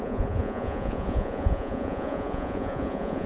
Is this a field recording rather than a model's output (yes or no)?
no